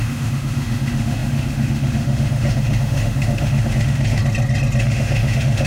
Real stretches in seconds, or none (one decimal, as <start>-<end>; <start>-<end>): 4.2-4.8